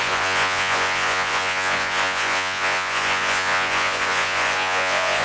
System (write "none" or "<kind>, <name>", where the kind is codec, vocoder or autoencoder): vocoder, Vocos